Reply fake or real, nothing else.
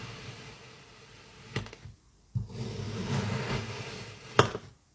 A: real